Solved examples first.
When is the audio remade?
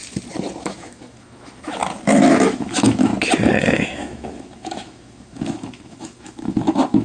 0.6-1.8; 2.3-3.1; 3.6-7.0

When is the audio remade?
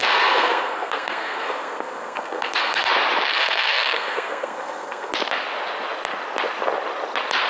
0.0-2.9; 3.3-5.1